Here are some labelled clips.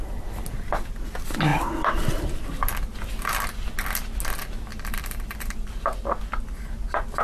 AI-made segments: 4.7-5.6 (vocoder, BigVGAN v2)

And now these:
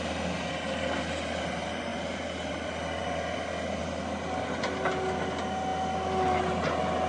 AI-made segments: none